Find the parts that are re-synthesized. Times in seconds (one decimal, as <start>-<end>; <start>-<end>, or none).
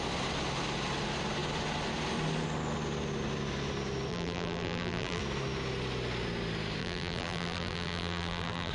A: 4.1-5.2; 6.8-8.7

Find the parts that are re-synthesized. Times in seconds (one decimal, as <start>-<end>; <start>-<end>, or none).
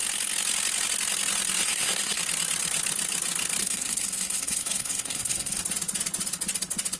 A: 1.6-2.2; 3.6-5.6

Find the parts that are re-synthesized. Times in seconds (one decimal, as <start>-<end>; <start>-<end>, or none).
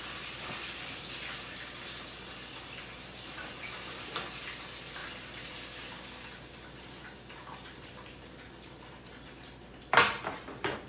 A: none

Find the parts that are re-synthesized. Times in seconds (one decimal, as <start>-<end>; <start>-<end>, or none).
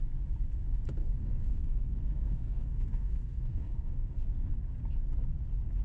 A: 1.0-4.5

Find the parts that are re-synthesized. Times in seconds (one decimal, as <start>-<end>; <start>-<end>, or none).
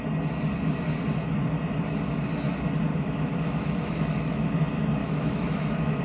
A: 2.9-4.5; 5.0-6.0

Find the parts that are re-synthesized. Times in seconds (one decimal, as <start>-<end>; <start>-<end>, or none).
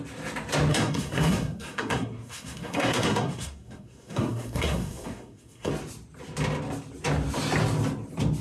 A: 0.7-5.7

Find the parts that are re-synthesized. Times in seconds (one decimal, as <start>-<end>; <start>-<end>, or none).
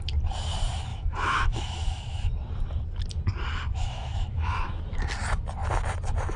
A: 0.9-2.3; 3.7-4.8